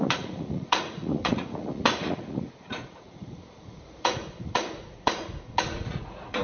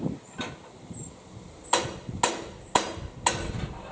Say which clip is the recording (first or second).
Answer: second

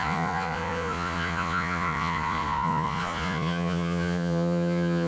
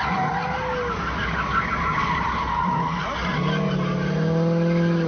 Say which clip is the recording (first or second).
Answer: second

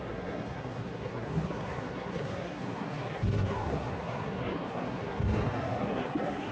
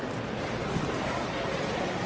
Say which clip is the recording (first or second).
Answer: second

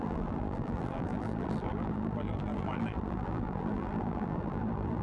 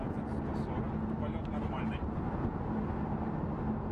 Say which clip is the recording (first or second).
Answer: second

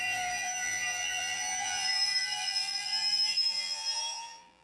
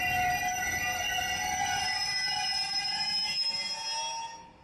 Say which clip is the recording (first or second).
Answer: second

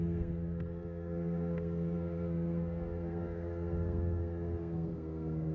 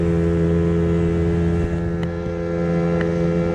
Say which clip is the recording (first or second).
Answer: second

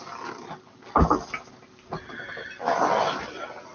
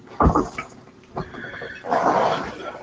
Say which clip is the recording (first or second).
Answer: first